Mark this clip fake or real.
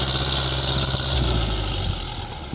real